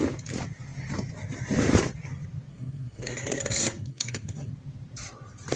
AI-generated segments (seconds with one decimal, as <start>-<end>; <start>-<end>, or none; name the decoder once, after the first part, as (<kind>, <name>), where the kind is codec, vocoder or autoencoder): 2.5-4.5 (codec, SNAC)